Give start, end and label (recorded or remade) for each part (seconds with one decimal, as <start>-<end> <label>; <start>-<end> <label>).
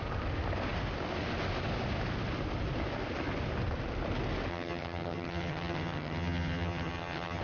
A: 0.0-4.5 recorded; 4.5-7.4 remade